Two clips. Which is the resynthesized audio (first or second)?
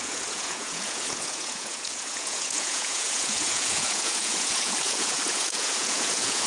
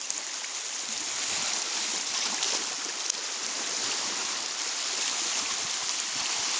first